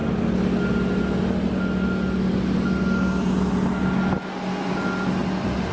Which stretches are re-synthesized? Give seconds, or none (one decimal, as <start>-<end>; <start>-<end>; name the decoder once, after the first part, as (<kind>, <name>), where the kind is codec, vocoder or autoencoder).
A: none